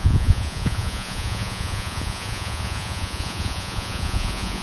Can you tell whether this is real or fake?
fake